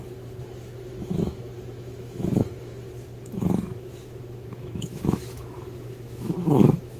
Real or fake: fake